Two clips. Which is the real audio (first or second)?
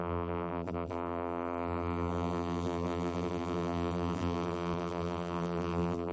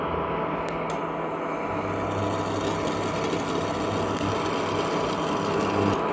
second